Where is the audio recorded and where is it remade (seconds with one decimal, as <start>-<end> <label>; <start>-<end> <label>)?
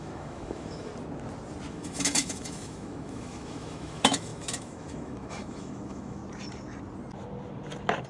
0.0-0.9 remade; 0.9-1.7 recorded; 1.7-6.2 remade; 6.2-8.1 recorded